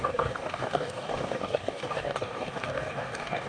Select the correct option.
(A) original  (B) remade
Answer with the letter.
B